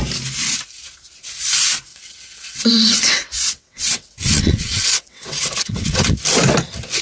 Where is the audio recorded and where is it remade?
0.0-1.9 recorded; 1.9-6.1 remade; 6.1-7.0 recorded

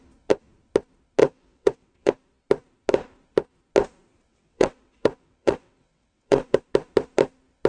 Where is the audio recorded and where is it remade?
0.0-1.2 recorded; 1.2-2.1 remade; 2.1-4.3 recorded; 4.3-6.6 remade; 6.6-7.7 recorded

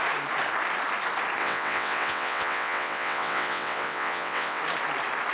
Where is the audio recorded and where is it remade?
0.0-1.4 recorded; 1.4-4.6 remade; 4.6-5.3 recorded

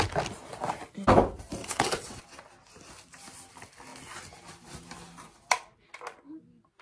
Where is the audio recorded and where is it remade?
0.0-1.6 recorded; 1.6-2.2 remade; 2.2-6.8 recorded

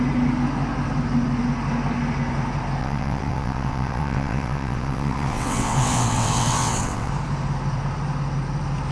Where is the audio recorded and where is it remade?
0.0-2.8 recorded; 2.8-7.1 remade; 7.1-8.9 recorded

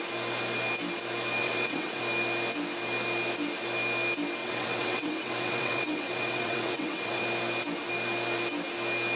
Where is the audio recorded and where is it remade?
0.0-1.4 recorded; 1.4-2.0 remade; 2.0-4.4 recorded; 4.4-7.2 remade; 7.2-9.2 recorded